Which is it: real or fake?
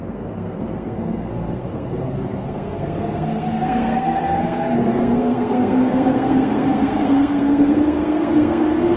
fake